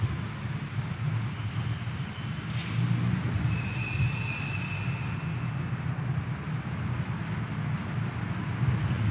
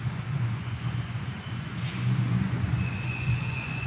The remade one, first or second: second